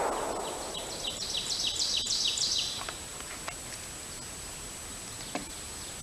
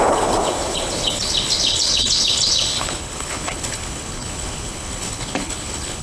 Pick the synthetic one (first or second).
second